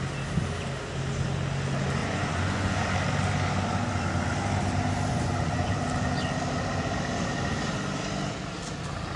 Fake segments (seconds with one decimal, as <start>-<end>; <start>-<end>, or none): 2.0-2.8; 5.1-5.7